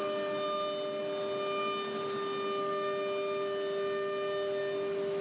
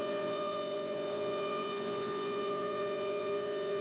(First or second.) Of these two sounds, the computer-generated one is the second